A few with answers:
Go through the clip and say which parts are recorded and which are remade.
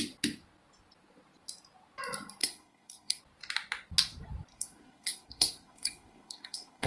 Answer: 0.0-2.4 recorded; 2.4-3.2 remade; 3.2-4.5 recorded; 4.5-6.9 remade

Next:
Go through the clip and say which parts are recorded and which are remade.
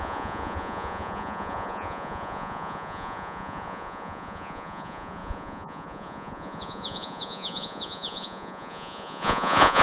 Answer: 0.0-9.8 remade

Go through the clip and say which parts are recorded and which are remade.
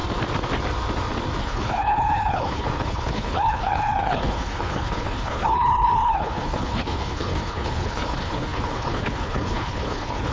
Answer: 0.0-1.4 recorded; 1.4-10.3 remade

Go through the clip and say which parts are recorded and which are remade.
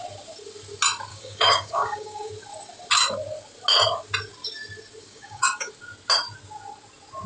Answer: 0.0-1.1 recorded; 1.1-2.3 remade; 2.3-5.0 recorded; 5.0-5.7 remade; 5.7-7.3 recorded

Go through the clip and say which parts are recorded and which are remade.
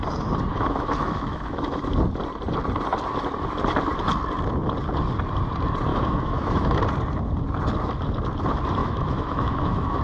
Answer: 0.0-0.5 recorded; 0.5-1.8 remade; 1.8-5.9 recorded; 5.9-6.8 remade; 6.8-8.8 recorded; 8.8-10.0 remade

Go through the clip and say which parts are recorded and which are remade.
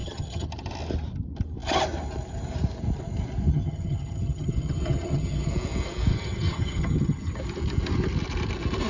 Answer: 0.0-0.5 remade; 0.5-3.5 recorded; 3.5-5.5 remade; 5.5-6.1 recorded; 6.1-7.4 remade; 7.4-8.9 recorded